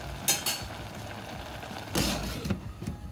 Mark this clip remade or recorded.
recorded